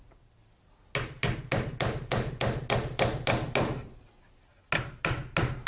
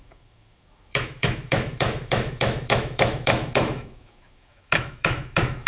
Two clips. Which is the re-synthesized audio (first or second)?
second